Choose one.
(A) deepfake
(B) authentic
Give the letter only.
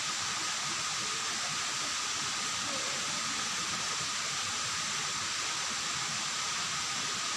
B